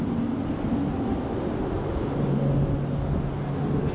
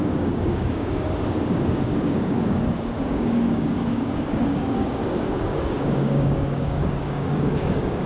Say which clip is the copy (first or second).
second